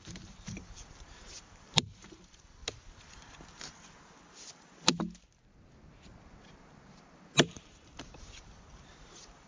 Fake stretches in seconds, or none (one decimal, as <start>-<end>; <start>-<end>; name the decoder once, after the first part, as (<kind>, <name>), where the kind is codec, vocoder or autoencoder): 0.0-2.6 (vocoder, BigVGAN v2); 6.3-9.5